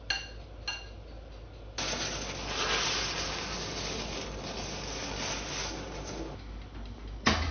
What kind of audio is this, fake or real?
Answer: real